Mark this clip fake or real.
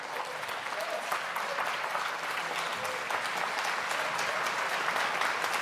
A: real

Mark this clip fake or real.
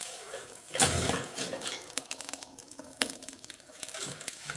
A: fake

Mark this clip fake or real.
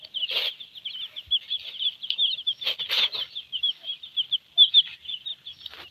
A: real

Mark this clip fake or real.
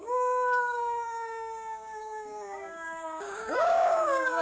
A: fake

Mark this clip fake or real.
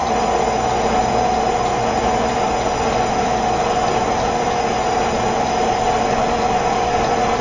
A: real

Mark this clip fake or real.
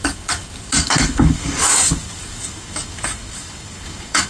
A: fake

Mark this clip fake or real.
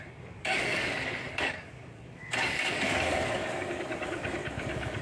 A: fake